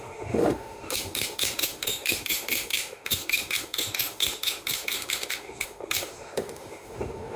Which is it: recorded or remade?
remade